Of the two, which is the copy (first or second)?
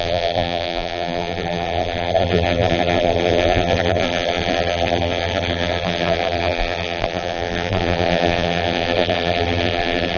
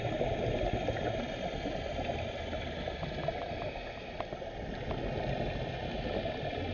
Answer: first